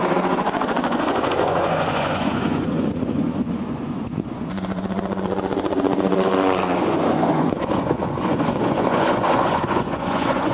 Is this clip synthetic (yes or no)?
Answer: yes